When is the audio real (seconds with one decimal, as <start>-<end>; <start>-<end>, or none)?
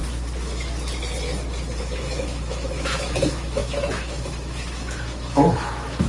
0.0-1.8